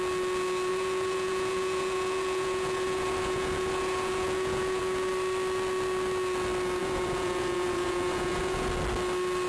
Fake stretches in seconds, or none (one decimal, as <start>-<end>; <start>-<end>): 0.7-4.8; 6.8-8.7